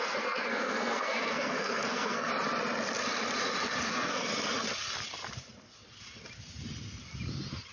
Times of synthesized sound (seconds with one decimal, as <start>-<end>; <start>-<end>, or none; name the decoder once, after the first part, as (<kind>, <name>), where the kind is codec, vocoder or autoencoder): 0.0-2.3 (codec, SNAC); 3.9-4.3